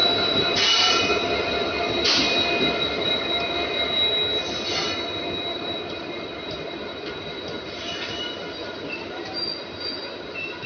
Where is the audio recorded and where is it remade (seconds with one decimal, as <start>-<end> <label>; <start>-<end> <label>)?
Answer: 0.0-10.7 recorded